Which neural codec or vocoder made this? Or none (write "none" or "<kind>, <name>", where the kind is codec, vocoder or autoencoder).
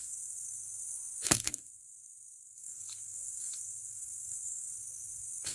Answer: codec, SNAC